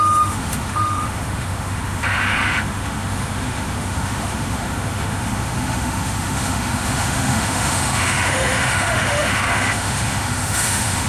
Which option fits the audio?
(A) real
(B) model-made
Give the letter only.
B